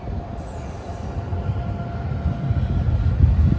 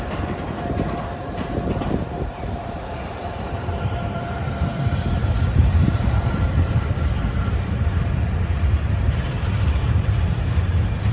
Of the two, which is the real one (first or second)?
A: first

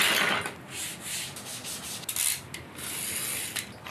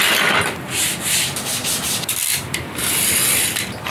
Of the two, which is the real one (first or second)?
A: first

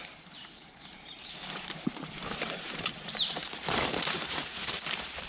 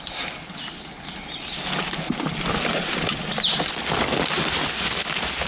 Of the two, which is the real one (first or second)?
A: second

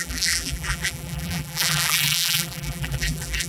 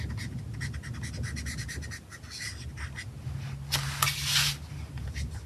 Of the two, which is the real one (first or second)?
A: second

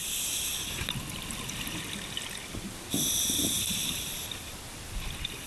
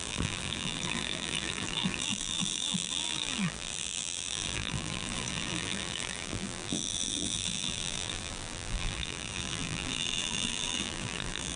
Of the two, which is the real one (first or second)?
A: first